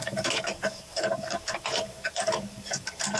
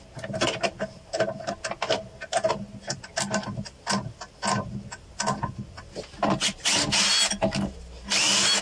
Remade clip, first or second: first